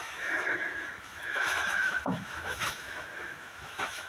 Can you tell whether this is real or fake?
fake